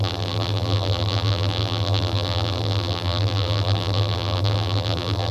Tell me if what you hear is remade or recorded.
remade